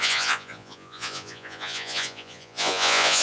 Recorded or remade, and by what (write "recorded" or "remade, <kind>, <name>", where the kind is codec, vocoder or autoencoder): remade, vocoder, Vocos